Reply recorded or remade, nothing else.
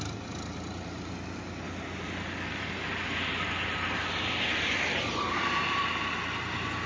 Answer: recorded